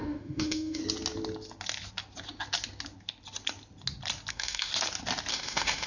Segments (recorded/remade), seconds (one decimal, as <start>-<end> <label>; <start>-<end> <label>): 0.0-0.8 remade; 0.8-4.3 recorded; 4.3-4.7 remade; 4.7-5.3 recorded; 5.3-5.9 remade